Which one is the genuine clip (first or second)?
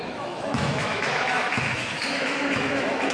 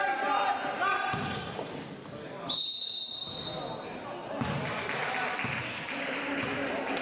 second